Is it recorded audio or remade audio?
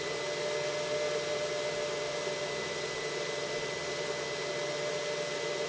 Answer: recorded